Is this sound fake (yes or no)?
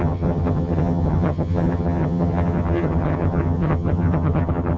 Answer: yes